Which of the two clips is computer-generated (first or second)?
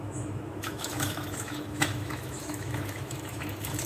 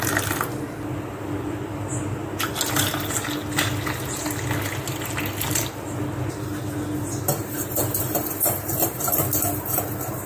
first